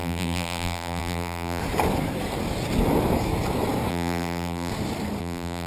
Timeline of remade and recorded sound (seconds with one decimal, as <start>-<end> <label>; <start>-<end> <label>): 0.0-1.6 remade; 1.6-3.9 recorded; 3.9-4.7 remade; 4.7-5.2 recorded; 5.2-5.7 remade